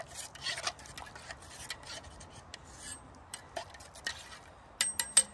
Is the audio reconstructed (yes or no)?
no